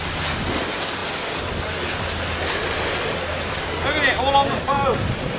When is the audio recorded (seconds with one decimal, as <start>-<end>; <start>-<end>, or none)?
0.0-5.4

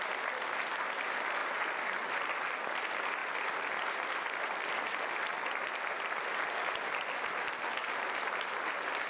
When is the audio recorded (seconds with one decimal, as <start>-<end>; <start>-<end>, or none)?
0.0-9.1

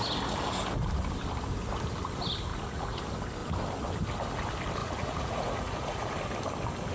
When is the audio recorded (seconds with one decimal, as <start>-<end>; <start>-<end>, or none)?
0.0-2.5; 3.0-4.8; 6.1-6.9